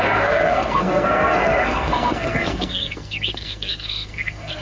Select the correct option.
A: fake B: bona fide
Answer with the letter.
A